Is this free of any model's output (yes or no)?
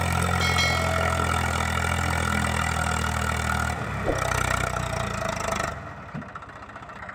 yes